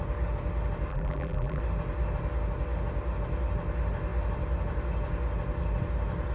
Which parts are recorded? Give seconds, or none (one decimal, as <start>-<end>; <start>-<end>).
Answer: 0.0-0.9; 1.6-6.3